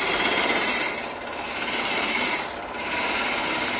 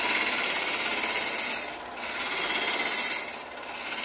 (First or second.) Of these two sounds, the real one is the second